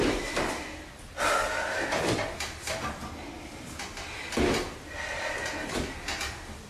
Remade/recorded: recorded